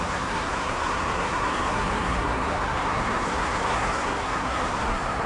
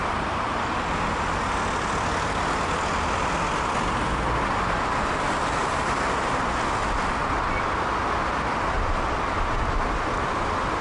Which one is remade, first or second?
first